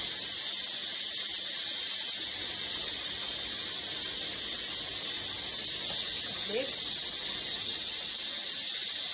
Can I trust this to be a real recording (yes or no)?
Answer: yes